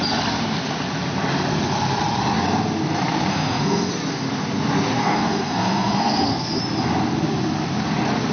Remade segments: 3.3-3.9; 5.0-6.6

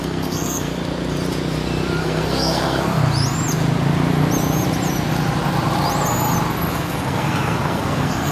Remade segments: 0.0-0.7; 2.0-3.0; 6.7-8.3

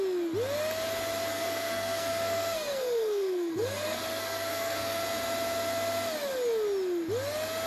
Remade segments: 1.3-5.0